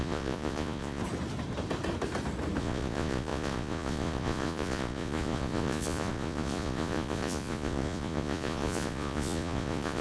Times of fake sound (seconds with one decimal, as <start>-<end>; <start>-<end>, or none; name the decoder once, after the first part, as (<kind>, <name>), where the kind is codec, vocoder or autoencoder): 0.0-1.0 (vocoder, Vocos); 2.6-10.0